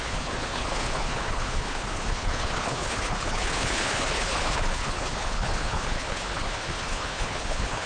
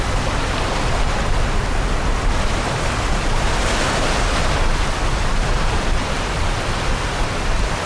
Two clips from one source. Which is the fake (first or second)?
first